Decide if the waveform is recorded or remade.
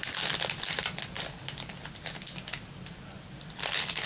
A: recorded